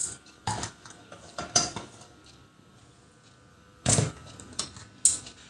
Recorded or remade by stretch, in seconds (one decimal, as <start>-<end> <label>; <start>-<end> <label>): 0.0-2.8 remade; 2.8-3.5 recorded; 3.5-4.6 remade; 4.6-5.5 recorded